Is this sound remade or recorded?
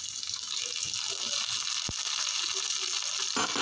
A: recorded